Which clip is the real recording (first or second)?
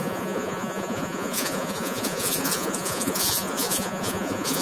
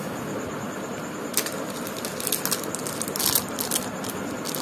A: second